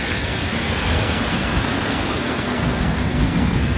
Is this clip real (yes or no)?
no